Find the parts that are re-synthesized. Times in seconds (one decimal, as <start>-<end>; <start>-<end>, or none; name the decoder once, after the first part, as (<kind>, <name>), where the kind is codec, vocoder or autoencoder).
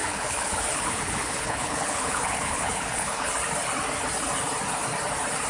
0.0-3.3 (codec, HILCodec)